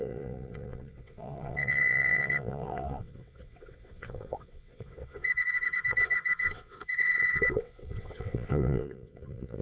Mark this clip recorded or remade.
remade